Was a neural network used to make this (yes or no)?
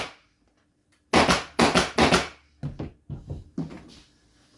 no